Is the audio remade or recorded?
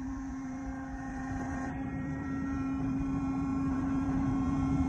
remade